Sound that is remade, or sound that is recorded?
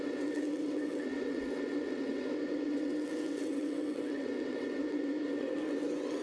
remade